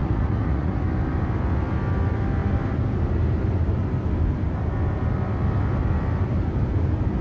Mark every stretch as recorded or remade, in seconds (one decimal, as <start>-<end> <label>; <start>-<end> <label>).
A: 0.0-0.8 remade; 0.8-7.2 recorded